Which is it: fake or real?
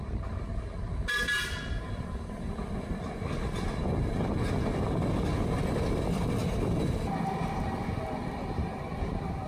real